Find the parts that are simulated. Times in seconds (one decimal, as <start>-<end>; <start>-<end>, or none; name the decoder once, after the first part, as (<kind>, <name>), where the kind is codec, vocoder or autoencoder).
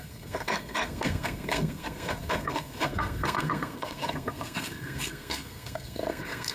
0.0-6.5 (codec, SNAC)